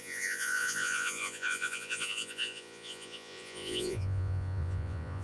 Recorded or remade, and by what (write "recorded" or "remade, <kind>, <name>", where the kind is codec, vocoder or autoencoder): remade, vocoder, Vocos